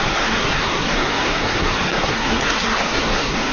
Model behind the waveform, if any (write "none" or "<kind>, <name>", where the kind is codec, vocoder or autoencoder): codec, SNAC